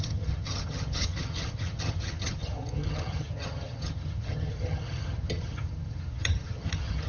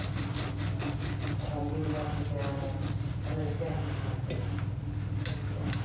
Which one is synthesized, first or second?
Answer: first